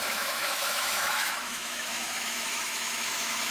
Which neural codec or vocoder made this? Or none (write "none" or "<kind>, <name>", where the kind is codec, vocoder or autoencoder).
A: autoencoder, DAC-VAE